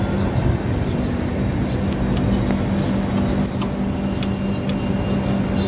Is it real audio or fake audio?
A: real